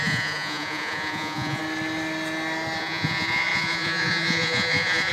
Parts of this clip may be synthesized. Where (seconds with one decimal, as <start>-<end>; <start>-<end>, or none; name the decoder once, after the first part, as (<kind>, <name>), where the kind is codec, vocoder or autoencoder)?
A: 0.0-1.6 (vocoder, Vocos); 2.8-5.1